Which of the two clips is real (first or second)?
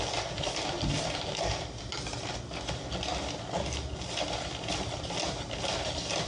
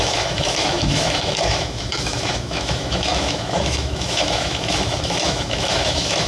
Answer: first